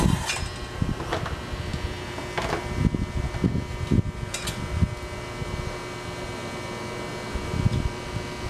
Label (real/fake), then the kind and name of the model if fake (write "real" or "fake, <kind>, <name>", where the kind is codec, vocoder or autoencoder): real